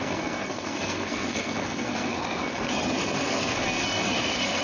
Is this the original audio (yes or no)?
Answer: no